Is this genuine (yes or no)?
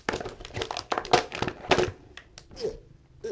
yes